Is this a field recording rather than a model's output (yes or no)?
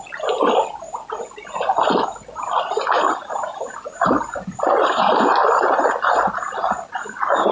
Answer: yes